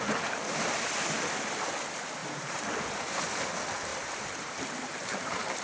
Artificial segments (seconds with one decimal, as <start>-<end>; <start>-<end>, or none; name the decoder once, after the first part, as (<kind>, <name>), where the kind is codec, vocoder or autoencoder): 2.2-3.2 (vocoder, BigVGAN v2); 3.9-5.6